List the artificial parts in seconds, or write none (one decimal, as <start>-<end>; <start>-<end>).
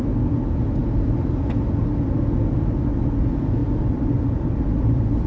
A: 3.6-5.3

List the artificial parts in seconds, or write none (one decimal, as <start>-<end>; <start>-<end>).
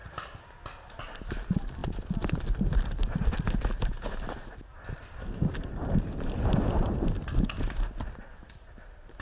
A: 1.8-4.2; 4.7-5.5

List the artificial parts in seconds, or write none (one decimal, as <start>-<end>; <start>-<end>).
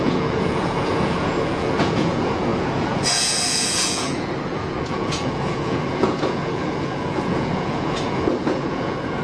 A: 0.0-9.2